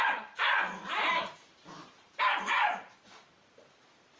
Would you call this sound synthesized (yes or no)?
yes